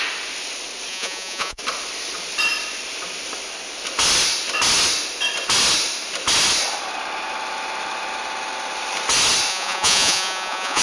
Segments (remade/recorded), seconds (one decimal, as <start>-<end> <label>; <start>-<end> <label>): 0.0-0.9 recorded; 0.9-1.6 remade; 1.6-9.5 recorded; 9.5-10.8 remade

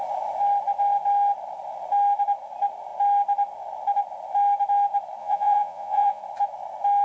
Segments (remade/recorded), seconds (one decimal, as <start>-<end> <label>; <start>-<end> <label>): 0.0-5.2 recorded; 5.2-6.2 remade; 6.2-7.0 recorded

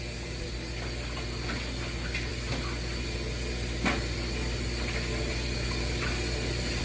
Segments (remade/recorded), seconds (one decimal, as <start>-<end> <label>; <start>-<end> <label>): 0.0-6.8 recorded

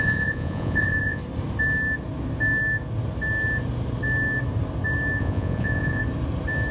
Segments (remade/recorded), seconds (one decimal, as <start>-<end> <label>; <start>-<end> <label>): 0.0-1.2 remade; 1.2-5.2 recorded; 5.2-6.0 remade; 6.0-6.7 recorded

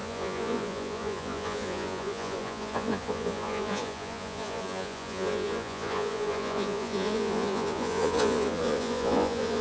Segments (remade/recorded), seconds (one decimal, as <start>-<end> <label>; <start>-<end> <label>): 0.0-9.6 remade

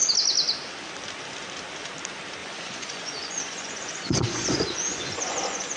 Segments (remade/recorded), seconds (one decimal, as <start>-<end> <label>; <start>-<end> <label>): 0.0-2.4 recorded; 2.4-5.8 remade

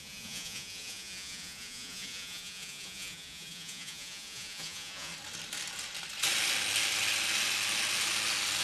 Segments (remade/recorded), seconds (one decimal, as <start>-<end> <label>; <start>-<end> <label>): 0.0-5.1 remade; 5.1-8.6 recorded

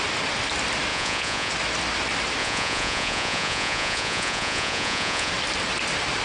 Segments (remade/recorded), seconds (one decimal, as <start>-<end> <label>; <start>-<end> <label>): 0.0-0.9 recorded; 0.9-1.5 remade; 1.5-2.4 recorded; 2.4-5.3 remade; 5.3-6.2 recorded